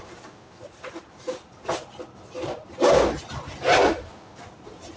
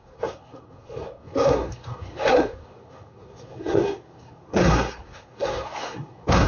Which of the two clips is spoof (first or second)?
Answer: second